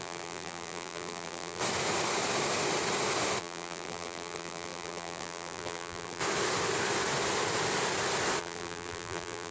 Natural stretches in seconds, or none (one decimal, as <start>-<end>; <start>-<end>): 1.6-3.4; 6.2-8.4